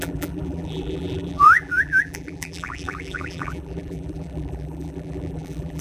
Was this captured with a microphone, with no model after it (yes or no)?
no